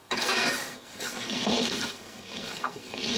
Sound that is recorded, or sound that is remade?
remade